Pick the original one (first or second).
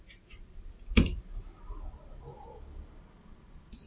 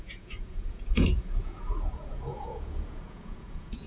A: first